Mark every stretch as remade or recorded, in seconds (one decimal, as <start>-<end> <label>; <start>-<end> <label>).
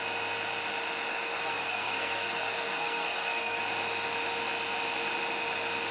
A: 0.0-1.1 recorded; 1.1-3.6 remade; 3.6-5.9 recorded